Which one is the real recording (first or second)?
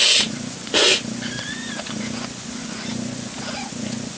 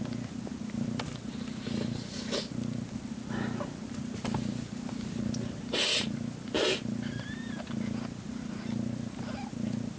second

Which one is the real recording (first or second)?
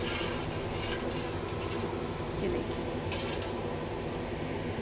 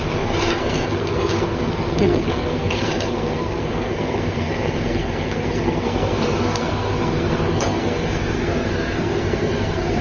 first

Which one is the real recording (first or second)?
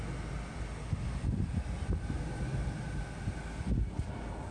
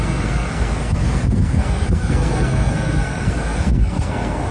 first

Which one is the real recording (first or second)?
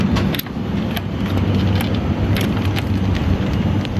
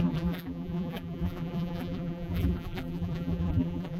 first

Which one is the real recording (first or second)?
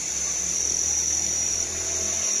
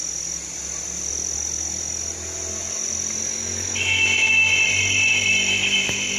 second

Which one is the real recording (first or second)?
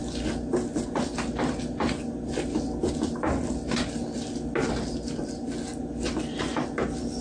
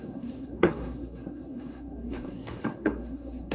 first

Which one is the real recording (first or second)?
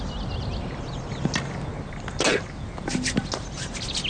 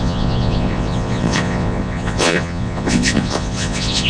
first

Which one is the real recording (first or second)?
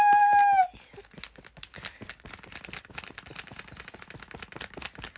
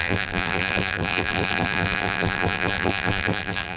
first